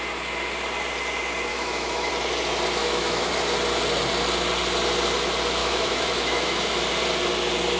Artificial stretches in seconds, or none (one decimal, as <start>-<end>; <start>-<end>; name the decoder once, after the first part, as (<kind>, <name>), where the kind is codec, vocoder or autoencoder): 1.5-2.1 (autoencoder, DAC-VAE); 2.8-3.3; 5.6-6.8